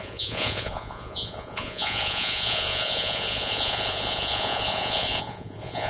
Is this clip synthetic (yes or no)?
yes